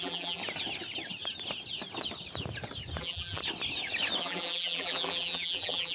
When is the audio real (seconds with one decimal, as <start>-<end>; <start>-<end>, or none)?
0.4-3.0; 3.4-4.2